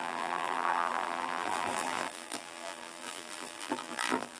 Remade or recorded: remade